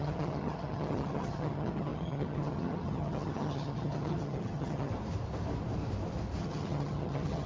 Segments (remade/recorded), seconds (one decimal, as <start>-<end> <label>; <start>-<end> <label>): 0.0-4.9 remade; 4.9-6.4 recorded; 6.4-7.5 remade